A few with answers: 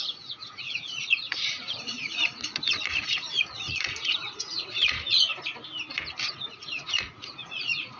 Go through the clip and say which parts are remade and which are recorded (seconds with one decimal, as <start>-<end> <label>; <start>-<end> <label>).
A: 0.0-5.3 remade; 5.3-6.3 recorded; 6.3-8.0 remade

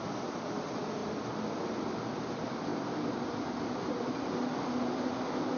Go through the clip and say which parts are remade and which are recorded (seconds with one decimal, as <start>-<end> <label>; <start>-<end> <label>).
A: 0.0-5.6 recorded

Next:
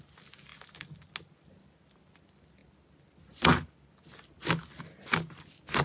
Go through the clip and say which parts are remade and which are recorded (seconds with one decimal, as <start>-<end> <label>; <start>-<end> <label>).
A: 0.0-5.8 recorded

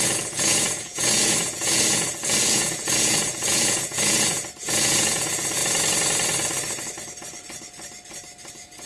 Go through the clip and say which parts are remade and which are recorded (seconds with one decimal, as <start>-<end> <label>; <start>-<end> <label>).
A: 0.0-5.6 remade; 5.6-8.5 recorded; 8.5-8.9 remade

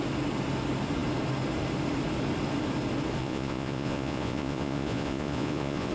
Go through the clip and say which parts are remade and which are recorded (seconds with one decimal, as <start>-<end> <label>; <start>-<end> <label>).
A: 0.0-3.2 recorded; 3.2-5.9 remade